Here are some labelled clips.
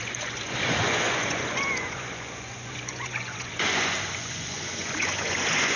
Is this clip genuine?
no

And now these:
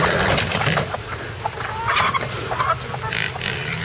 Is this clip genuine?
yes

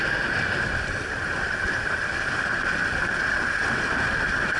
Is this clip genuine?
no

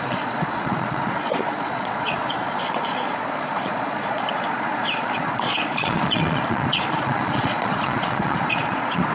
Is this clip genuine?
no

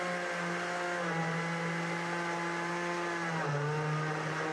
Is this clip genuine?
yes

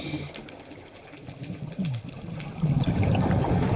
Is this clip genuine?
yes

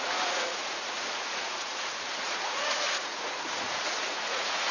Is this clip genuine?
no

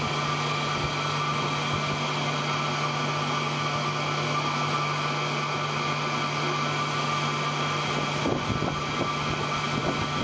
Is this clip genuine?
yes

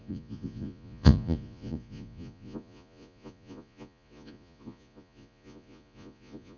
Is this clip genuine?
no